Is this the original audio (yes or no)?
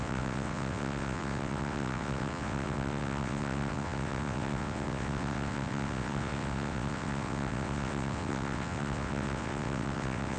no